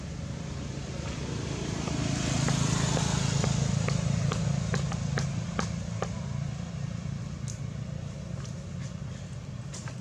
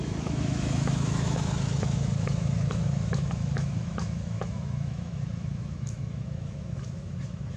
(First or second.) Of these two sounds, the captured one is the first